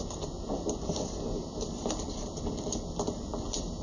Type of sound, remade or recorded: recorded